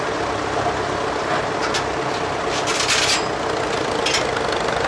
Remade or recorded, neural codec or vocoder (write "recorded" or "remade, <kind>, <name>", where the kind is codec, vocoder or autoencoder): recorded